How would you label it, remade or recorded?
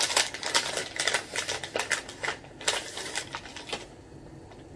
recorded